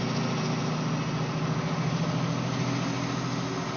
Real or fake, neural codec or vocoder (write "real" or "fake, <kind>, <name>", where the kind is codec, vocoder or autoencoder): real